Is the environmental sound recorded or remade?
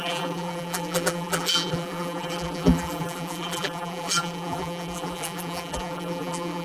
remade